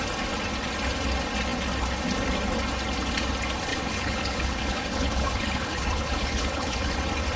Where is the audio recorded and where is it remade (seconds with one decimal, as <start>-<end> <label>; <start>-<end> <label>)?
0.0-3.7 recorded; 3.7-6.9 remade; 6.9-7.4 recorded